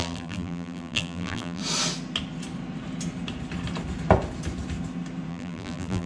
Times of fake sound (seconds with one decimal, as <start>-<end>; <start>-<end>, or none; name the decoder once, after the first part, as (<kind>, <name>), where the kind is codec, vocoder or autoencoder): 0.0-1.6 (vocoder, BigVGAN v2); 5.3-6.1